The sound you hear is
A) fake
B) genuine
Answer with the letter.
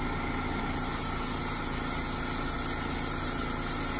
B